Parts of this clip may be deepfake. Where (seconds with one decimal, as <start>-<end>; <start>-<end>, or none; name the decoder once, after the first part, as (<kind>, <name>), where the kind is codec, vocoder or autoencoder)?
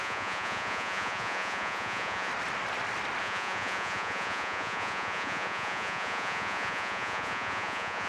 0.0-2.3 (vocoder, Vocos); 3.2-8.1